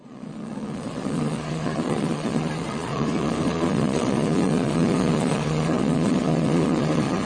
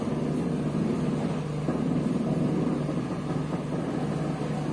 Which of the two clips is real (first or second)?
second